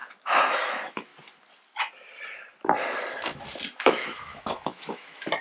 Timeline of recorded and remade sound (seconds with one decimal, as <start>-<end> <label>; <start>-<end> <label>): 0.0-1.1 remade; 1.1-3.8 recorded; 3.8-5.4 remade